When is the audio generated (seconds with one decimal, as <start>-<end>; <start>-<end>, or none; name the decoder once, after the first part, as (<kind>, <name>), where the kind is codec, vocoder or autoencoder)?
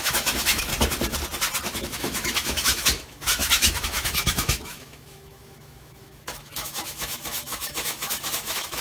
0.0-0.7 (autoencoder, DAC-VAE); 1.8-8.8